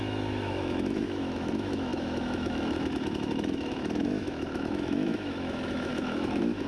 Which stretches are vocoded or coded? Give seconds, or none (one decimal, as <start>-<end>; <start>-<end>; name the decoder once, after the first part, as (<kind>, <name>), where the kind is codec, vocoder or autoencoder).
0.0-6.7 (autoencoder, DAC-VAE)